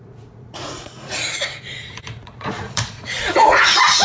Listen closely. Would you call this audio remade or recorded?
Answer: remade